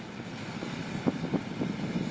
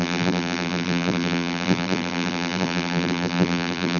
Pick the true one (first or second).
first